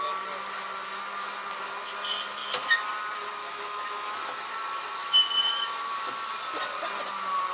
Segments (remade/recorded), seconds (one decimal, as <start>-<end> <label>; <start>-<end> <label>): 0.0-3.4 recorded; 3.4-4.5 remade; 4.5-7.5 recorded